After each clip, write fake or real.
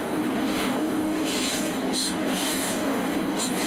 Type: fake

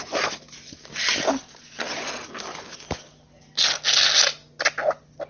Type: real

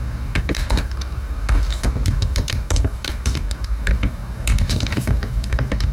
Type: fake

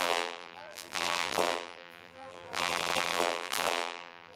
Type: fake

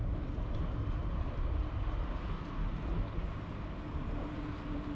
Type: real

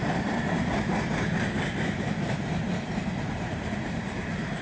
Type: fake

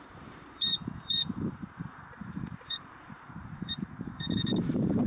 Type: fake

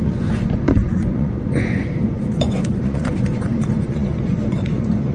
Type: fake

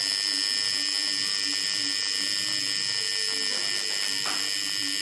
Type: real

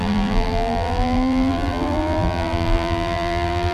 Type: fake